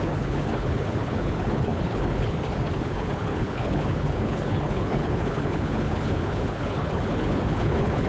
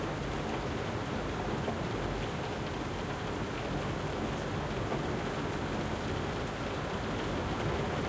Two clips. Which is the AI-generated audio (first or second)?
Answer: first